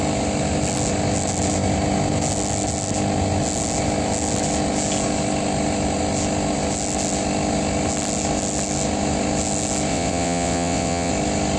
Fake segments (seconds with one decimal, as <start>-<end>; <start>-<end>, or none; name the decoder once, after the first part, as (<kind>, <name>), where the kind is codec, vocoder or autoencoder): 9.9-11.1 (vocoder, WaveNeXt)